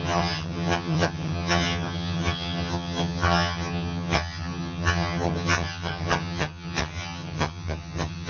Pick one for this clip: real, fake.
fake